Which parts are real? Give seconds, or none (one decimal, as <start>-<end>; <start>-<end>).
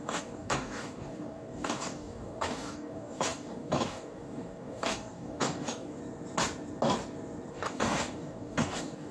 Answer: 6.0-7.5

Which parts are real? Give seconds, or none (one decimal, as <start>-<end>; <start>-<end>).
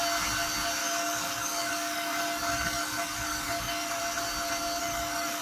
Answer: 0.0-0.8; 4.0-4.8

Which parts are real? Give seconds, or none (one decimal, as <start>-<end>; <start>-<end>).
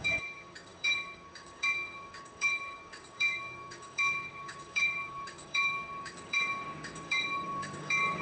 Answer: none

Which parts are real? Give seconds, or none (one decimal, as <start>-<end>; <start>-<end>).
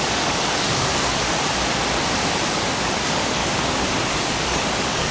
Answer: 0.9-2.5; 3.4-4.1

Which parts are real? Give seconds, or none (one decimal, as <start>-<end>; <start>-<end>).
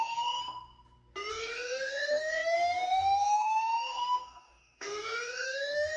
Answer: 0.4-1.3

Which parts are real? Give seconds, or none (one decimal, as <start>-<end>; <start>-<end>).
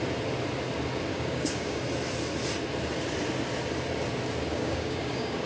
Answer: 0.0-1.1; 1.8-4.5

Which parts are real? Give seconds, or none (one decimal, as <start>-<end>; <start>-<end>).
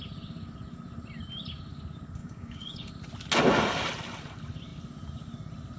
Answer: 0.0-2.2; 2.9-5.8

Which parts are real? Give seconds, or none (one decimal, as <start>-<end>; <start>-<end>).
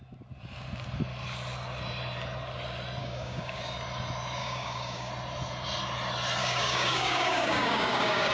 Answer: 0.0-3.0; 3.6-4.4; 5.1-6.4